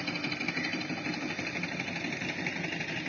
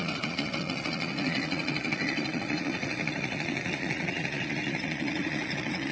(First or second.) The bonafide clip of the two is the first